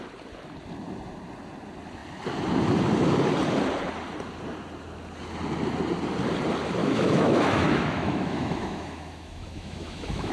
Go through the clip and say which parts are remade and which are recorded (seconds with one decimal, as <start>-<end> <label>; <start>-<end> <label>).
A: 0.0-6.8 recorded; 6.8-10.3 remade